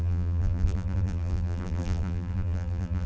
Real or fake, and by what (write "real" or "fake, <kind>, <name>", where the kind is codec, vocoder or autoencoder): fake, vocoder, BigVGAN v2